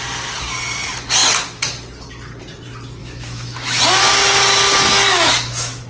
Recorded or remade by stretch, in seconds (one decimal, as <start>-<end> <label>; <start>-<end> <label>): 0.0-3.0 recorded; 3.0-3.8 remade; 3.8-5.1 recorded; 5.1-5.9 remade